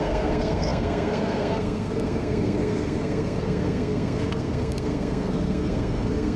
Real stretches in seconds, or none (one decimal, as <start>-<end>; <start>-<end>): none